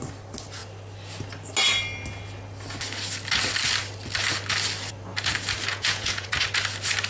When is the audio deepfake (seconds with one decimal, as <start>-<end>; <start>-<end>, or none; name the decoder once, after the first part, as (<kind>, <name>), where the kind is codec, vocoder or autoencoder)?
5.7-6.3 (vocoder, Vocos)